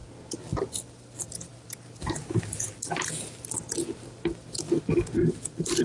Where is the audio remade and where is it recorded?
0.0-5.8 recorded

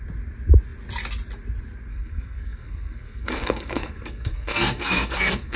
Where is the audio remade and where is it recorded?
0.0-1.9 recorded; 1.9-5.6 remade

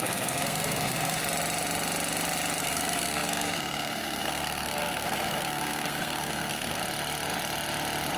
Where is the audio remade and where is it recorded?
0.0-1.2 remade; 1.2-2.6 recorded; 2.6-6.8 remade; 6.8-8.2 recorded

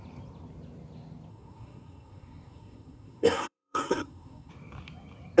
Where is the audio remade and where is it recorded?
0.0-1.3 recorded; 1.3-4.5 remade; 4.5-5.4 recorded

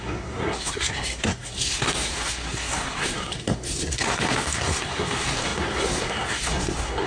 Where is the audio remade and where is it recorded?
0.0-7.1 remade

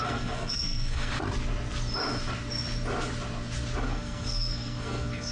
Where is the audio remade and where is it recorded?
0.0-1.1 remade; 1.1-3.8 recorded; 3.8-5.3 remade